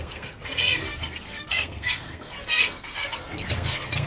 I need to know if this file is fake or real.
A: fake